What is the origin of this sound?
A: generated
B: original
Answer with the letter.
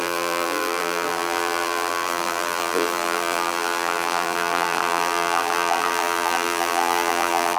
A